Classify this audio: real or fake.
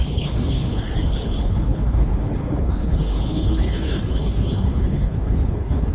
fake